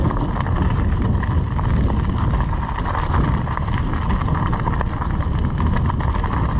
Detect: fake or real real